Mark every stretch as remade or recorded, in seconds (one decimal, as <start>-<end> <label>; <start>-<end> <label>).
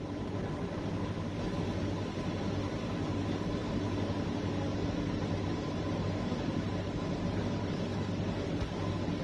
0.0-9.2 recorded